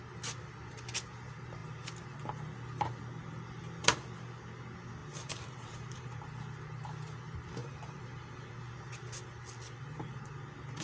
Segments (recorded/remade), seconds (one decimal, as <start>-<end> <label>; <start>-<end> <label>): 0.0-5.0 recorded; 5.0-6.2 remade; 6.2-7.6 recorded; 7.6-8.5 remade; 8.5-10.8 recorded